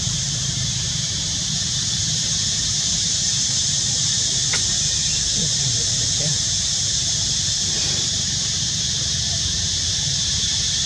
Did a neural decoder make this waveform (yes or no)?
yes